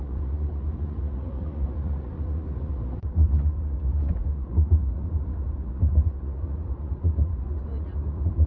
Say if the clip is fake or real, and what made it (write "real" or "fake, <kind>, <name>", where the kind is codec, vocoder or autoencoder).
fake, vocoder, Vocos